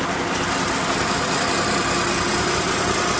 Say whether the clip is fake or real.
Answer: real